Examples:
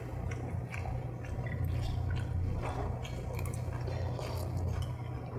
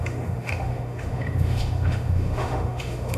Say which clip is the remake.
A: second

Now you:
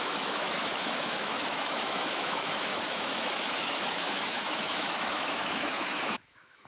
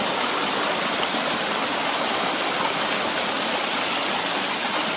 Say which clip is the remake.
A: first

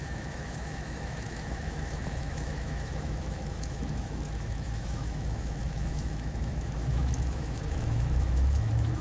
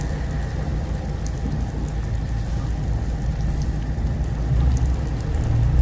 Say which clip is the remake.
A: first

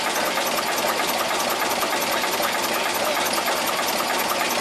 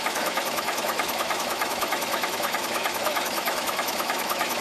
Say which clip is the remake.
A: second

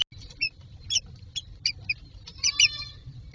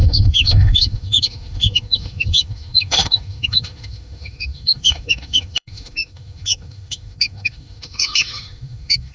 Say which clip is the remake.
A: second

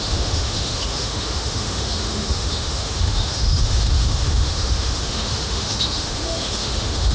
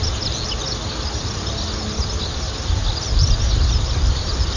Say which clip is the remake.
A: first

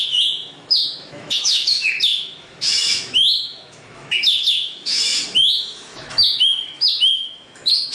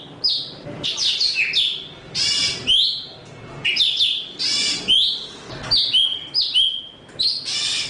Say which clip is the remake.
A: first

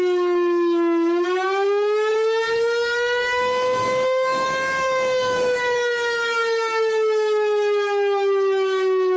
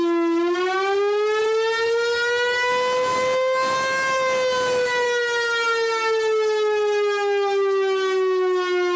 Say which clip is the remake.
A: first